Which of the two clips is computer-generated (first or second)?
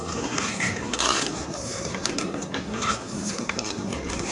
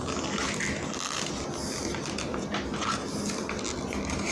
first